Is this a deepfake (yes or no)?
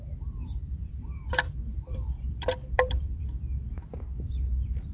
yes